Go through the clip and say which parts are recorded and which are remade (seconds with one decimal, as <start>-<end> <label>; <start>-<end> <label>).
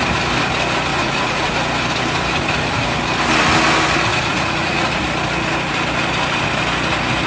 0.0-0.9 recorded; 0.9-1.5 remade; 1.5-4.1 recorded; 4.1-5.0 remade; 5.0-7.3 recorded